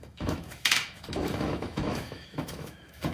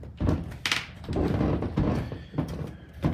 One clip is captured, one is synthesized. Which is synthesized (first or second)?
first